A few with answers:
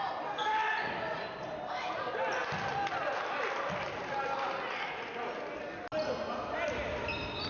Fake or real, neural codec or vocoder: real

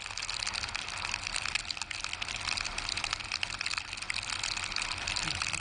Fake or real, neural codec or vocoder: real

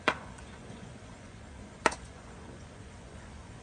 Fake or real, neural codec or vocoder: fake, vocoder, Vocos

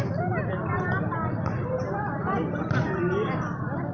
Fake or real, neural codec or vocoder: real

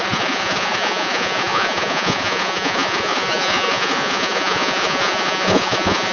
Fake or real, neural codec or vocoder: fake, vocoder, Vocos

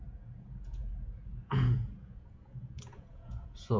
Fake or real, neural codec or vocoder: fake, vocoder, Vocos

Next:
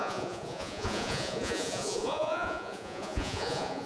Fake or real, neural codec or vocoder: fake, vocoder, Vocos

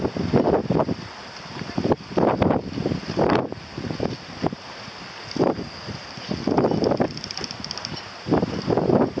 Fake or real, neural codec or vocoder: real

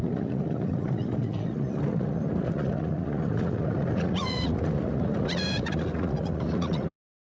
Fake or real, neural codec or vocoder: fake, vocoder, Vocos